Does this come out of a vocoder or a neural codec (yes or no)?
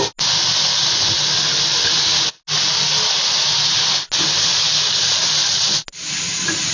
no